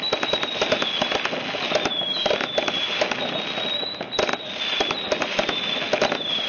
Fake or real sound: real